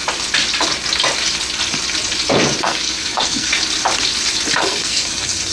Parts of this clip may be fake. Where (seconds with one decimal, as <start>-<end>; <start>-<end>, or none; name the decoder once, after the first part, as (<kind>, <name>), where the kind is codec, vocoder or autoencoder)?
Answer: 2.6-3.5 (codec, SNAC); 4.6-5.5